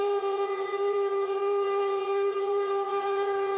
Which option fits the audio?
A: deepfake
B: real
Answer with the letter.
A